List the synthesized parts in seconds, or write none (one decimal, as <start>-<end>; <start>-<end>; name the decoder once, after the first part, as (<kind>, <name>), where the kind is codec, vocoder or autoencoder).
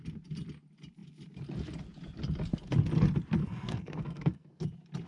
3.4-4.6 (codec, SNAC)